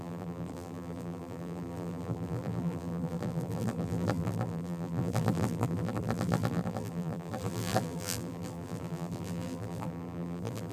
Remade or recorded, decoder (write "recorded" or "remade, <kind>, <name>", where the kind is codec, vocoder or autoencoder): remade, vocoder, BigVGAN v2